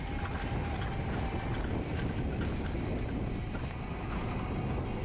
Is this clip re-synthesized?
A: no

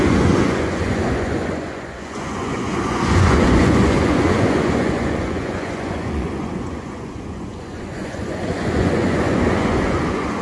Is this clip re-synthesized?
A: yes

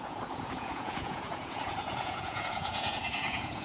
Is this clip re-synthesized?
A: yes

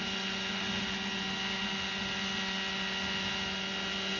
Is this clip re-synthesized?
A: no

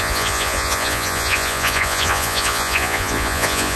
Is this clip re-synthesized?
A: yes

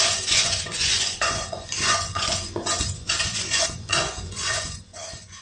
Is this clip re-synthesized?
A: yes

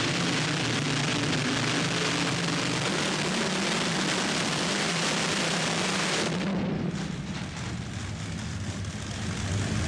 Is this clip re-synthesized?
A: no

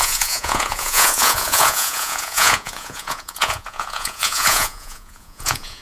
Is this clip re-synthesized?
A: yes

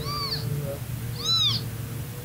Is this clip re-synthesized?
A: no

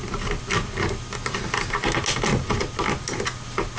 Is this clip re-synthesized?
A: no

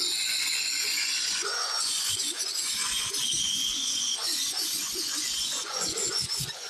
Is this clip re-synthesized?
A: yes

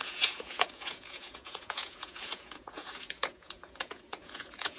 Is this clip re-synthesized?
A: yes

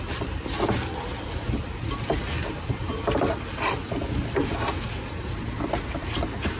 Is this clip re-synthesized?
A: no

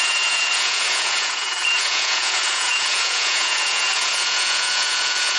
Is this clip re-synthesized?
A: yes